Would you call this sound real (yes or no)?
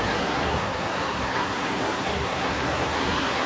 no